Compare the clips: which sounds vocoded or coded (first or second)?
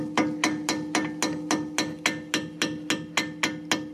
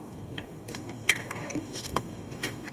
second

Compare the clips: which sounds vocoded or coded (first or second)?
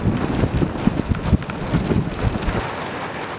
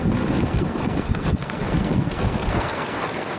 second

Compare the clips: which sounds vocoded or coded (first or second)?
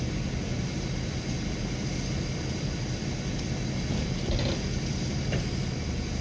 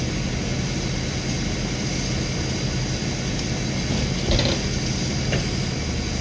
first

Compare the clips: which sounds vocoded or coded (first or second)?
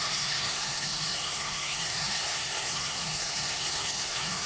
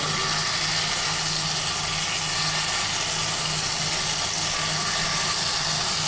first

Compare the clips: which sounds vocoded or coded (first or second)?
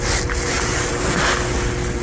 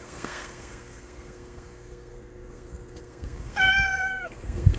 second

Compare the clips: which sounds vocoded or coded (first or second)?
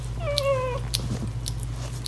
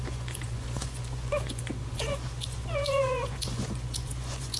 second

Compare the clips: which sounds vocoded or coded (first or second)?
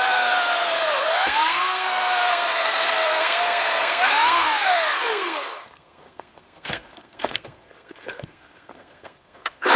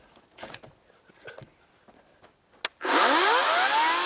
first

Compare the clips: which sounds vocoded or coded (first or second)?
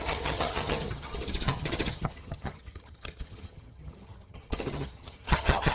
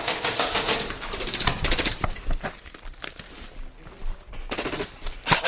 first